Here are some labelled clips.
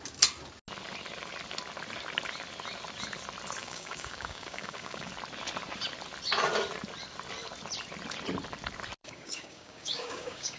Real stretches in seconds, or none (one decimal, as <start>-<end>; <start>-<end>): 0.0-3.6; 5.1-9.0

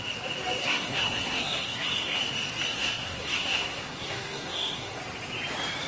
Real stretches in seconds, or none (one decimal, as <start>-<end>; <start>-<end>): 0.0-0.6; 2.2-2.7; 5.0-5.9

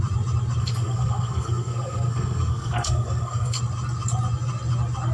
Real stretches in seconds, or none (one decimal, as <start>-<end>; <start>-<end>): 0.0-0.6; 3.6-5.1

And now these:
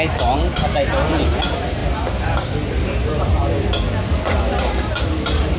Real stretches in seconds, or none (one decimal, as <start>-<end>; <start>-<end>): 0.0-5.6

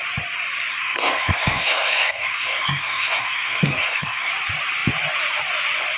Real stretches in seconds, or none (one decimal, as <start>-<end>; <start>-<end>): 0.0-0.7; 4.3-6.0

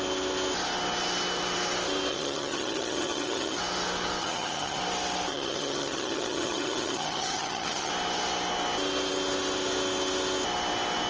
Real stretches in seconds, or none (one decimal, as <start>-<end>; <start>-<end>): 0.0-2.1; 3.6-4.2; 4.8-5.3; 7.9-11.1

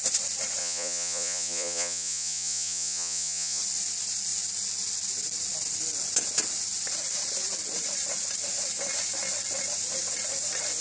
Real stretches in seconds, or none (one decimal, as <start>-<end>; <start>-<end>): 0.0-0.6; 3.6-10.8

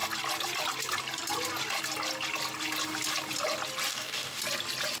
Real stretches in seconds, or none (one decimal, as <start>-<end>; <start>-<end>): 0.0-3.9; 4.4-5.0